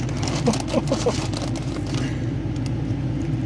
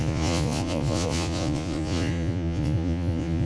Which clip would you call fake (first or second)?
second